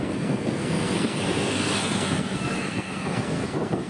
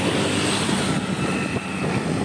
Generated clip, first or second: first